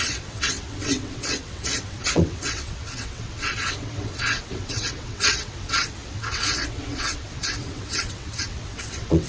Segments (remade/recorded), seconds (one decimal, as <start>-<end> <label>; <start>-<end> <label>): 0.0-9.3 remade